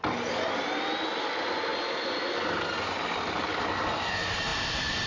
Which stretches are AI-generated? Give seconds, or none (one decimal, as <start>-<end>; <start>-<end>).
4.5-5.1

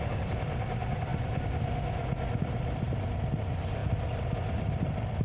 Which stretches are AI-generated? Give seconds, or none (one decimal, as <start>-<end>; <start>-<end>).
0.0-1.1; 2.4-5.2

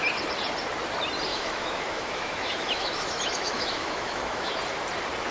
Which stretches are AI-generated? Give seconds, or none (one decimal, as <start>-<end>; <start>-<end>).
1.3-4.5

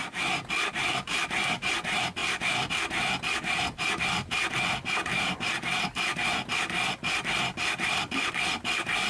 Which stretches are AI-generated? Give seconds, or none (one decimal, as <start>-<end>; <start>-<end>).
none

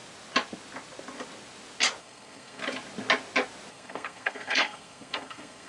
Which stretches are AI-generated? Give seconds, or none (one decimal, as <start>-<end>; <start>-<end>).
2.0-2.6; 3.7-5.7

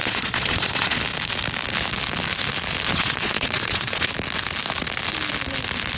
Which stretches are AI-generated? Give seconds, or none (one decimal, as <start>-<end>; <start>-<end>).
0.0-1.0; 2.9-4.1